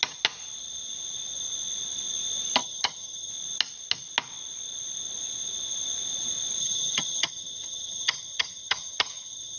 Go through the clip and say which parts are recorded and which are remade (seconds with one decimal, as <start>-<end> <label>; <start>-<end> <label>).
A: 0.0-2.6 recorded; 2.6-3.3 remade; 3.3-6.6 recorded; 6.6-9.6 remade